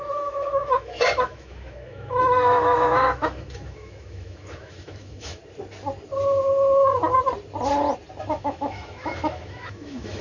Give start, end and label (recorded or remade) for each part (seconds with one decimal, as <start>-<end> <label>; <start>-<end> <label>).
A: 0.0-5.4 remade; 5.4-8.2 recorded; 8.2-10.2 remade

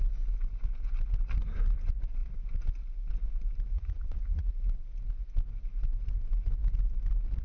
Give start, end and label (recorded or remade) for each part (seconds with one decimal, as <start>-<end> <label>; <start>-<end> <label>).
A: 0.0-3.7 recorded; 3.7-4.5 remade; 4.5-7.4 recorded

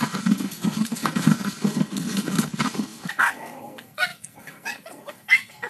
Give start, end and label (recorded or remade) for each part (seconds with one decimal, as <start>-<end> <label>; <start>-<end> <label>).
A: 0.0-5.7 remade

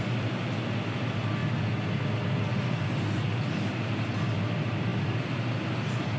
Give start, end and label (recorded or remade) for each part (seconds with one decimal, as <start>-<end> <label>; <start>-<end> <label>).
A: 0.0-6.2 recorded